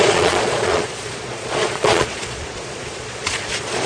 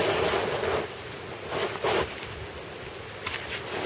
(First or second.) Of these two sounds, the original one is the second